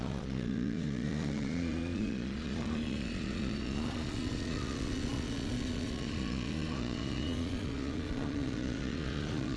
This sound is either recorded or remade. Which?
remade